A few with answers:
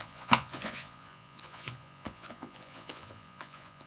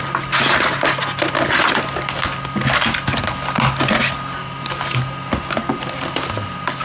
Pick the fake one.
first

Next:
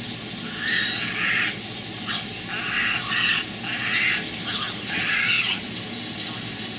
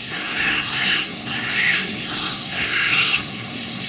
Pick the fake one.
second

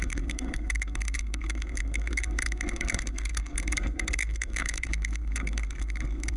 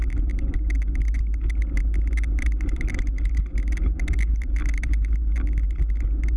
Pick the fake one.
first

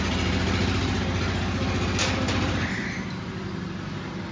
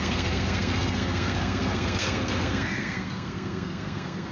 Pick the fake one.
second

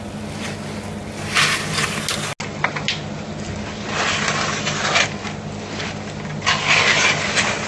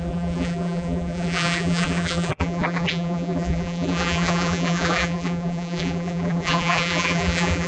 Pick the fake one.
second